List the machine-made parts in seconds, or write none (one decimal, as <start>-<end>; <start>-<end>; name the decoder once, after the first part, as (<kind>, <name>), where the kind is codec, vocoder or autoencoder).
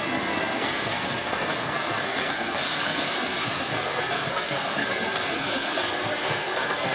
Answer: 0.0-6.9 (codec, SNAC)